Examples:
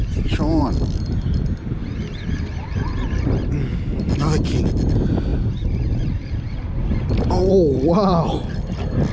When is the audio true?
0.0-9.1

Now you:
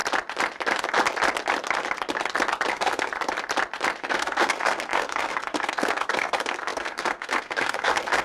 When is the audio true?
0.0-2.7; 3.1-4.0

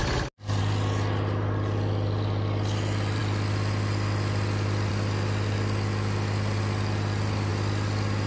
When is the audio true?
0.0-8.3

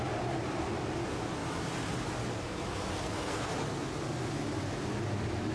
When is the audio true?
0.0-3.0; 3.5-5.5

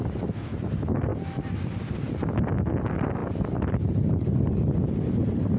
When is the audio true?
0.0-5.6

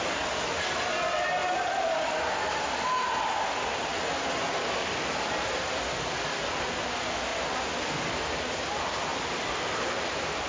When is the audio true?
0.0-10.5

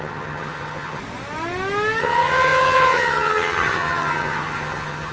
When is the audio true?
1.0-2.0